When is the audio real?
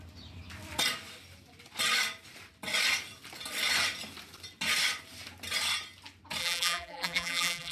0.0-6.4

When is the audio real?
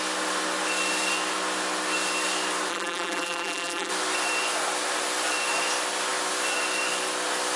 0.0-2.7; 3.9-7.6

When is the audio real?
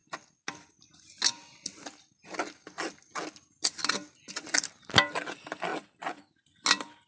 0.0-5.7; 6.2-7.1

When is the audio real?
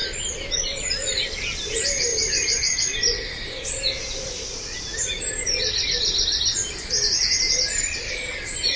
4.7-8.1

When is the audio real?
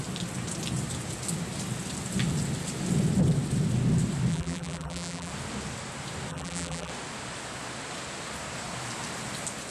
0.0-4.3; 5.3-6.3; 6.9-9.7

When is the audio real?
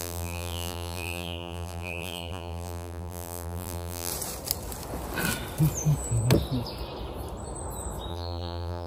4.1-8.1